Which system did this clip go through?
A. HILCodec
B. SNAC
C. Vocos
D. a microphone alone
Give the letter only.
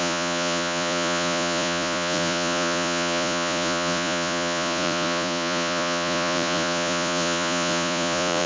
C